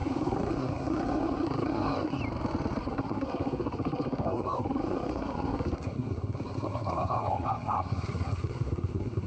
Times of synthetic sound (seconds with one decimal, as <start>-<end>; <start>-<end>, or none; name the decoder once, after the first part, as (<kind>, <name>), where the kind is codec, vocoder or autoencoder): 0.0-2.2 (codec, SNAC); 2.8-9.3